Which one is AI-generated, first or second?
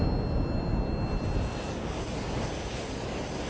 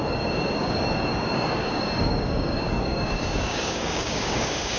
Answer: second